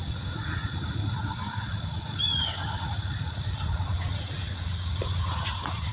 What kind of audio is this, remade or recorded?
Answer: remade